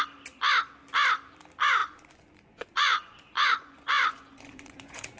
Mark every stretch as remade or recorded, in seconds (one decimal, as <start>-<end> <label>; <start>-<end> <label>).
0.0-1.8 recorded; 1.8-5.2 remade